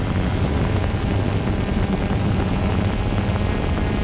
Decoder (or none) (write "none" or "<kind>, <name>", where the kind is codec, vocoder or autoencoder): none